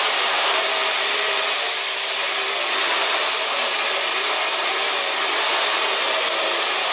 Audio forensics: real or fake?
real